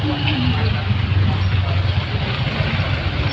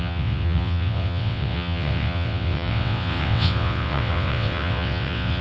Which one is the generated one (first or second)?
second